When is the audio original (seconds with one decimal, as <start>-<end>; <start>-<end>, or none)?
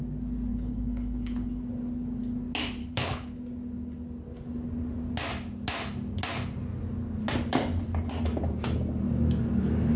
0.0-0.5; 1.6-2.8; 3.4-10.0